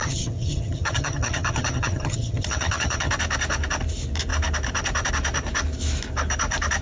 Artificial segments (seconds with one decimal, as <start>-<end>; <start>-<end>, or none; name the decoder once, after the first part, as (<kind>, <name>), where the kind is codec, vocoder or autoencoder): 0.0-3.1 (vocoder, HiFi-GAN)